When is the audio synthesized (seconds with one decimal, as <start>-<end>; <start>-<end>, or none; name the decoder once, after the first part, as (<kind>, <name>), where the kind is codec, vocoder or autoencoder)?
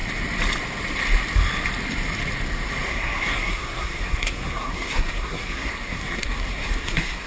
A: 2.9-7.3 (codec, SNAC)